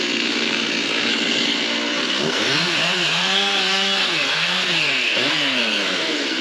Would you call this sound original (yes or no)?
no